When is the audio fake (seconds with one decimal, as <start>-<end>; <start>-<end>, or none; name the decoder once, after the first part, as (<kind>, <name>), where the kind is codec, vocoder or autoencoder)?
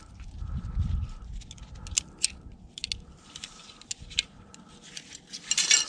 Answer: none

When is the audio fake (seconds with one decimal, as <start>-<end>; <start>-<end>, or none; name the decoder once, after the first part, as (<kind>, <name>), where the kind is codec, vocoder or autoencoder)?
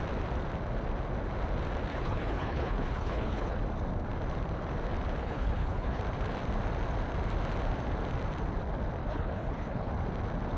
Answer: 1.9-3.6 (codec, HILCodec); 5.2-6.0; 9.0-9.9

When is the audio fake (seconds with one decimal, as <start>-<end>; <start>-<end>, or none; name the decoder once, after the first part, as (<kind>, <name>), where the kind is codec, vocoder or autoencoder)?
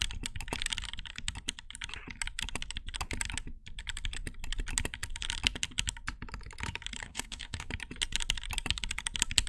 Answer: 7.0-7.7 (codec, DAC)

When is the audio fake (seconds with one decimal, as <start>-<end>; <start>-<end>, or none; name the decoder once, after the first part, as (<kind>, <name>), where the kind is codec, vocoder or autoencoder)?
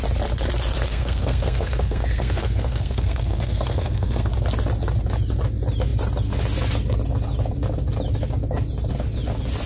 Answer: 0.9-4.3 (codec, SNAC)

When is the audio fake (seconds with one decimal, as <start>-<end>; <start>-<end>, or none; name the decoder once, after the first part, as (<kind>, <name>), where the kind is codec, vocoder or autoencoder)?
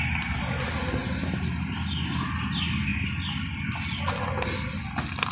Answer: none